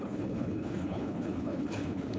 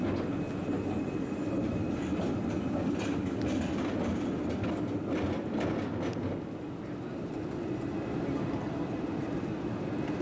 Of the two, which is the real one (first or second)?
second